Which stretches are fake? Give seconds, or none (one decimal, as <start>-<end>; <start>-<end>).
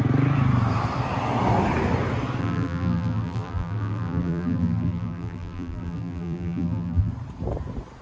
2.4-7.1